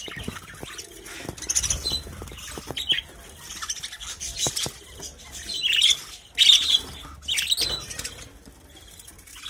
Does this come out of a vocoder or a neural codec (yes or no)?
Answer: no